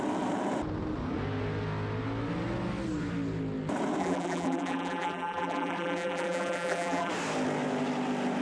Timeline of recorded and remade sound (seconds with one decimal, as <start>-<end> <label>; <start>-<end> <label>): 0.0-4.0 recorded; 4.0-7.1 remade; 7.1-8.4 recorded